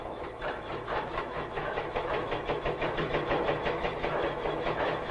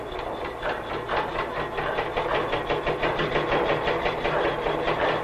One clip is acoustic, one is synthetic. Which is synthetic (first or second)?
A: first